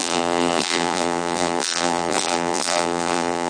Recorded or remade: remade